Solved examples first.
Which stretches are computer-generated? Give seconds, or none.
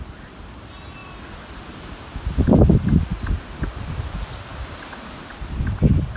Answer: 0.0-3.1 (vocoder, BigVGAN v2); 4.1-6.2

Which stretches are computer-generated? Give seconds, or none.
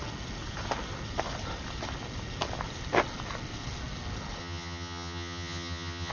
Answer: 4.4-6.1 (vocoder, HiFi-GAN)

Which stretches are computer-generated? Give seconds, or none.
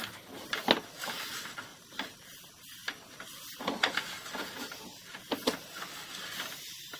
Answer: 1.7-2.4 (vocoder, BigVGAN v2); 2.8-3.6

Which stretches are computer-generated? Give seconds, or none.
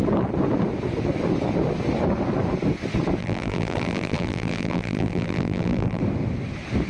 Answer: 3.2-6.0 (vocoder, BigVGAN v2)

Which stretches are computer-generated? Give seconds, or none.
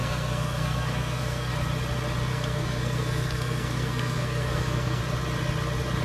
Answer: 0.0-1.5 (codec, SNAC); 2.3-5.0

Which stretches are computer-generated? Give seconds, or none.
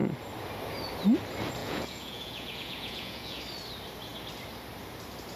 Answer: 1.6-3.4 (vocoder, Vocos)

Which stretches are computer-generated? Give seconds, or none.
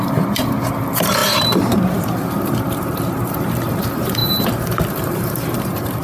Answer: 0.0-6.0 (vocoder, BigVGAN v2)